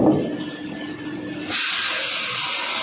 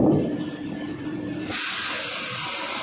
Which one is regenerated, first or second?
second